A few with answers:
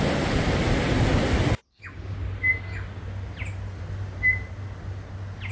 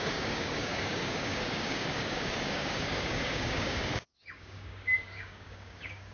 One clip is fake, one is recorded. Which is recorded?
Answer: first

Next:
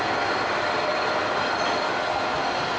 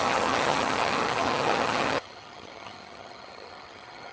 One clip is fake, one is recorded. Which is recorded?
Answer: first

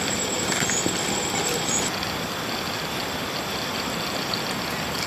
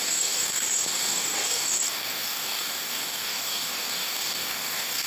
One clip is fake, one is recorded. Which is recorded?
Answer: first